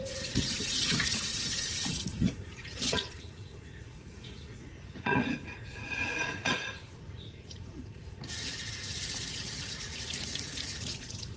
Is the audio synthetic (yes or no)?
yes